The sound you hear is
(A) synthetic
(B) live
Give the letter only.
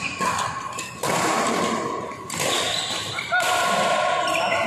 B